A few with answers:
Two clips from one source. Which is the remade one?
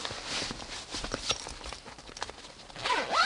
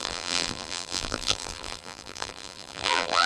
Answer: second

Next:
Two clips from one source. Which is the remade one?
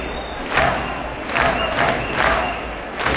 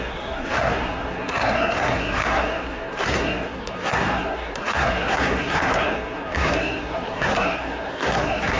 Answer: second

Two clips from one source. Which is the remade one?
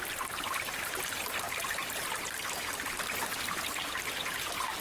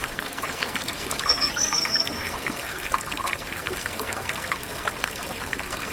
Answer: second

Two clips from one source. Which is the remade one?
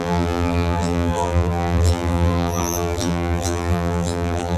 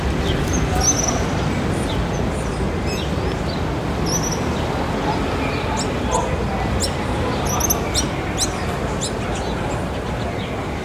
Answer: first